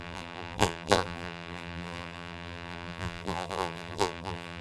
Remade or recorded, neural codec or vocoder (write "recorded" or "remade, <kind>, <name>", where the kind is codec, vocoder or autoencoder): remade, vocoder, BigVGAN v2